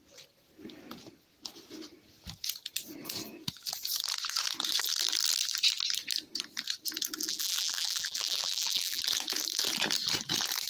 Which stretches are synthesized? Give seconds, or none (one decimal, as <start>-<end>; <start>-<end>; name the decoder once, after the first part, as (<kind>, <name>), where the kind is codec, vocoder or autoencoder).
7.2-9.0 (vocoder, BigVGAN v2)